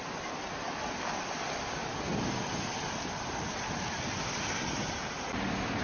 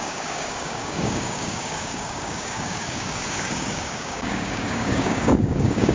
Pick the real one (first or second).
first